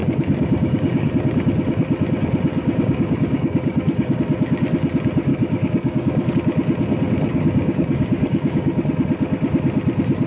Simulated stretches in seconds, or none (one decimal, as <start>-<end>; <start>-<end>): 0.0-1.1; 2.5-4.2; 5.3-6.3; 7.3-8.8